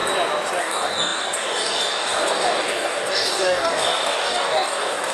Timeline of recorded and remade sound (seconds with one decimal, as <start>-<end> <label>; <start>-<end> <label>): 0.0-0.6 recorded; 0.6-5.1 remade